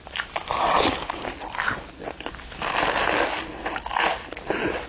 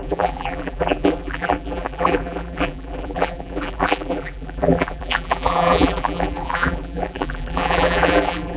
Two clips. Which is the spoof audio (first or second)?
second